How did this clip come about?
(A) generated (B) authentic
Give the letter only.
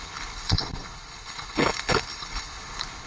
A